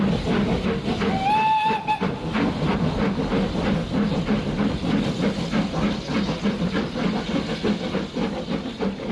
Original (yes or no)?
yes